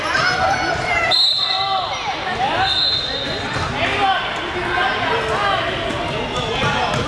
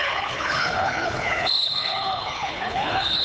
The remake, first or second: second